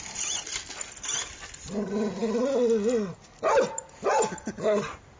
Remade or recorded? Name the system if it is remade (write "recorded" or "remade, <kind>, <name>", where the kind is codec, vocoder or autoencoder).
recorded